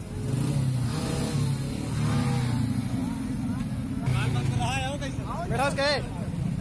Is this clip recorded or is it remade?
recorded